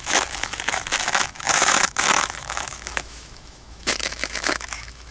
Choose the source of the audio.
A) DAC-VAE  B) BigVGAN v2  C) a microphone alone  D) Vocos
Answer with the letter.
A